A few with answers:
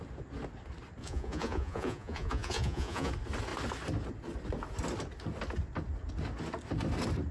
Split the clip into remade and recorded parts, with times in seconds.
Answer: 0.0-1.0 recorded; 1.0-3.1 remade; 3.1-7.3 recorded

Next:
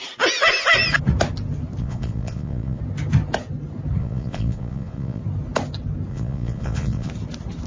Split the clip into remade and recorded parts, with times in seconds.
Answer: 0.0-1.8 recorded; 1.8-2.8 remade; 2.8-4.0 recorded; 4.0-5.2 remade; 5.2-6.1 recorded; 6.1-7.1 remade; 7.1-7.7 recorded